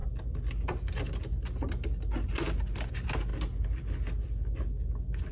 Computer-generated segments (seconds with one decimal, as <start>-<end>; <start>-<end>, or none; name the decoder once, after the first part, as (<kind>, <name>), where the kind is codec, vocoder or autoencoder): none

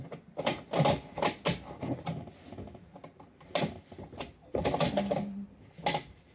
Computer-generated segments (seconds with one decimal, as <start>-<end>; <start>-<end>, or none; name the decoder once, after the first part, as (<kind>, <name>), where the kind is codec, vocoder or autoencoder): none

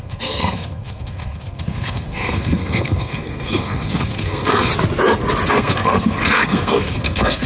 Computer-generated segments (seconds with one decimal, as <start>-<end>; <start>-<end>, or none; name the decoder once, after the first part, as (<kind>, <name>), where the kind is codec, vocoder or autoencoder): 0.0-4.7 (codec, SNAC); 5.5-7.5

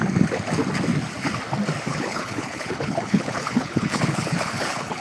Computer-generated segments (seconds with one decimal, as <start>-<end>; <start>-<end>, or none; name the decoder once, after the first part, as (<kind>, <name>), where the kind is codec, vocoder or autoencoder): 1.9-5.0 (codec, HILCodec)

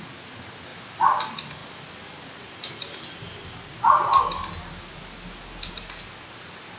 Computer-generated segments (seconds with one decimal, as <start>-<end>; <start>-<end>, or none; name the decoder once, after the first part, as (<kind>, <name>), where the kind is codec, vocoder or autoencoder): none

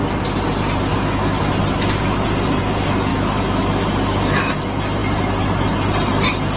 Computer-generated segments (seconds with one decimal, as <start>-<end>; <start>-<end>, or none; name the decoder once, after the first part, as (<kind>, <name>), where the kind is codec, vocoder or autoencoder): 0.9-1.4 (autoencoder, DAC-VAE); 3.1-4.5

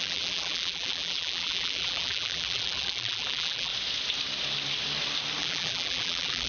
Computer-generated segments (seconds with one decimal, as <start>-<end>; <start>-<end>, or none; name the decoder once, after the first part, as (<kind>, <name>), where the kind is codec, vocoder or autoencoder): 0.0-3.7 (vocoder, BigVGAN v2); 5.4-6.5

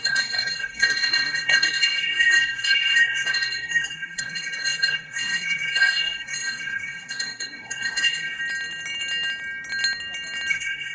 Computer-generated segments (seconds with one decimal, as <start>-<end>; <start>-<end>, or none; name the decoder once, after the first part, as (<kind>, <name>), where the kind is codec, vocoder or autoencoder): 0.0-8.4 (codec, SNAC); 10.5-10.9